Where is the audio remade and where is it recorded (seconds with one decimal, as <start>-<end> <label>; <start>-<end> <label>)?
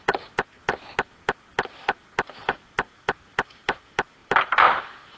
0.0-5.2 recorded